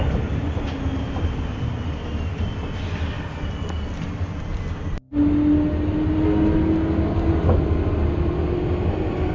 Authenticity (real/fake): real